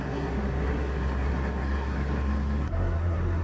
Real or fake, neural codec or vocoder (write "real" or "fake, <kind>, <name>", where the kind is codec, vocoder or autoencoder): fake, codec, SNAC